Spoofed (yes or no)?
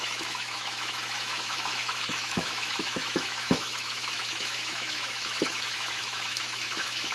yes